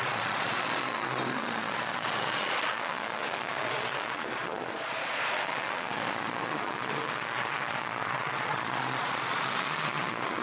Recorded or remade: remade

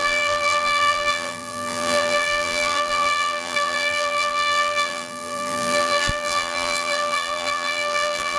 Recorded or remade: remade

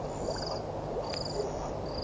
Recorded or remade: remade